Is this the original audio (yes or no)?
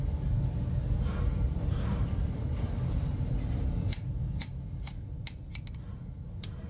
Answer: yes